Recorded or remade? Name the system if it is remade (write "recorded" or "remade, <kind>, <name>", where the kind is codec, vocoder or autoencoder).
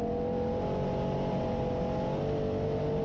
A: recorded